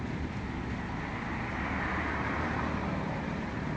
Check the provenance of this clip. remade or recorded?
recorded